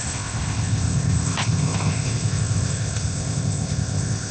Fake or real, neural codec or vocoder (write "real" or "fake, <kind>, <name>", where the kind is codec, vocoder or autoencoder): fake, codec, ZipCodec